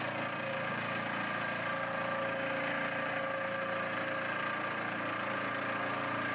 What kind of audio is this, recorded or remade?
recorded